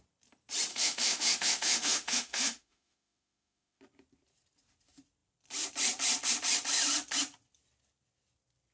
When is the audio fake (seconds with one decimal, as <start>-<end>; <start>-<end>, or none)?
0.7-3.8